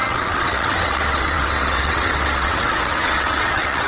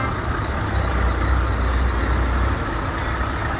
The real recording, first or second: second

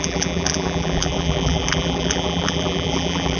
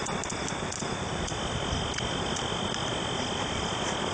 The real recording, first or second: second